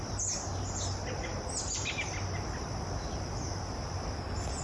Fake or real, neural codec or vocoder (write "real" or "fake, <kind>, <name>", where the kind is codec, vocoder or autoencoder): real